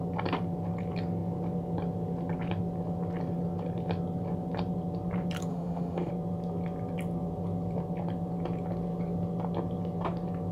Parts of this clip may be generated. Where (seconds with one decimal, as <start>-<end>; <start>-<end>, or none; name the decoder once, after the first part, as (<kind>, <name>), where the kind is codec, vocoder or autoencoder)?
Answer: 5.5-6.1 (autoencoder, DAC-VAE)